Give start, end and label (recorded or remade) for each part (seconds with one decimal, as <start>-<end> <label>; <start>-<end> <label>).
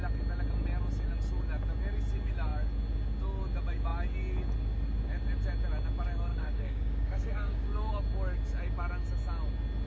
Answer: 0.0-6.3 recorded; 6.3-7.9 remade; 7.9-9.9 recorded